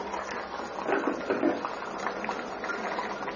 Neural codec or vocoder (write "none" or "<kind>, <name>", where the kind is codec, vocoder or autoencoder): none